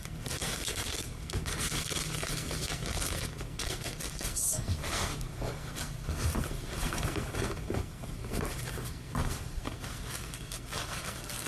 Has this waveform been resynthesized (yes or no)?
yes